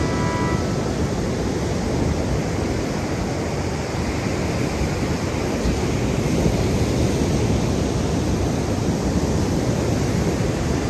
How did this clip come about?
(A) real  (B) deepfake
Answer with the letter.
A